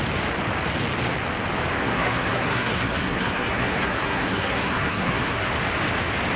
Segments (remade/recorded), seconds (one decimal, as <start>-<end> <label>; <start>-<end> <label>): 0.0-1.8 recorded; 1.8-5.5 remade; 5.5-6.4 recorded